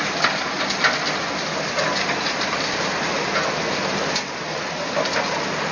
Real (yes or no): yes